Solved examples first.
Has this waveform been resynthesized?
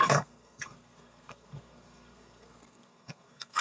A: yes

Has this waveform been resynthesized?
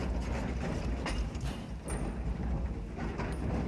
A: no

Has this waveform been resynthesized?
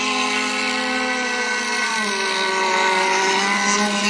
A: no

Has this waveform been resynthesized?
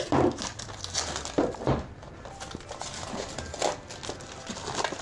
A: no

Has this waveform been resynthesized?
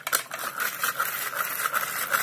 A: no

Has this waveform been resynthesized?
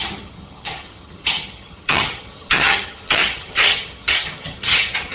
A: yes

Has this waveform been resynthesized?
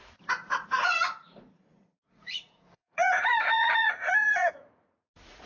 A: yes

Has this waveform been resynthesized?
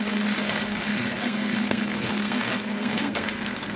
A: yes